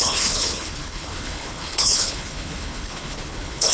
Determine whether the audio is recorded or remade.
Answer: remade